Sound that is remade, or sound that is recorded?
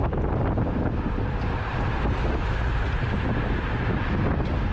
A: recorded